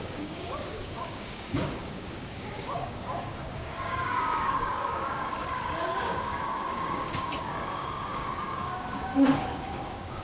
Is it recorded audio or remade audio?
remade